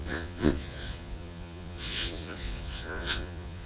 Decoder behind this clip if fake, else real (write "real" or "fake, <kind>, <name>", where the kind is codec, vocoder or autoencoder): fake, vocoder, Vocos